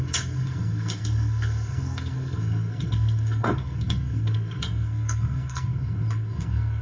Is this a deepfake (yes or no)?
yes